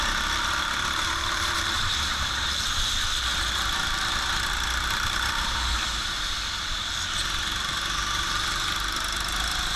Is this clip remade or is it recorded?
remade